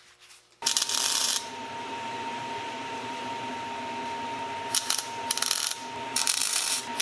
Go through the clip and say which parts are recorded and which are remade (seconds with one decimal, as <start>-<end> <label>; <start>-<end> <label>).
0.0-1.2 recorded; 1.2-3.5 remade; 3.5-6.4 recorded; 6.4-7.0 remade